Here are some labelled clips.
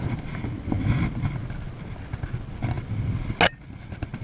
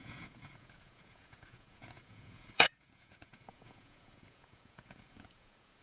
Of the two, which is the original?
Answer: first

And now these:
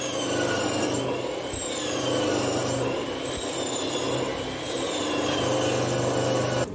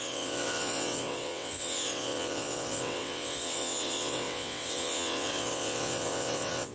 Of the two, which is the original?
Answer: first